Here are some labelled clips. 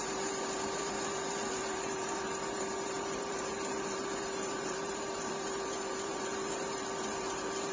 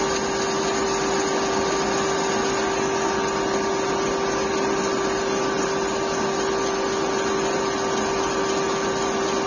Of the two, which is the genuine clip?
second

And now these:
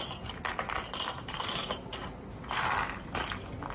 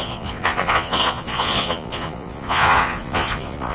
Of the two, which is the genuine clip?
first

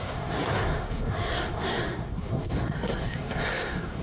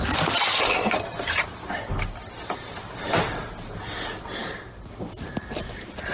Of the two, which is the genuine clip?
second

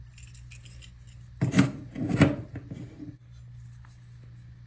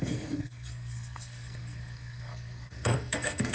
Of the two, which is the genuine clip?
first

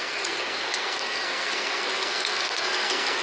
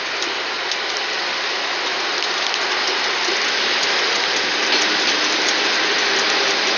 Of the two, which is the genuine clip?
second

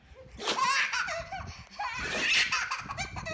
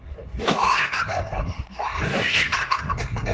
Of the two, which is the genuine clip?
first